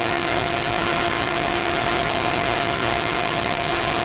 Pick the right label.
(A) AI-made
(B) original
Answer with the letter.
A